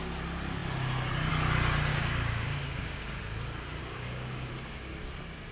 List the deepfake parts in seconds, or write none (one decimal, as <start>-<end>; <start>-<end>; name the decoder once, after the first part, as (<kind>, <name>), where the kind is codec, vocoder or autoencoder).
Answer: 1.9-3.2 (codec, DAC); 3.8-4.5